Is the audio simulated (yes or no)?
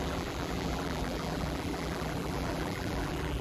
yes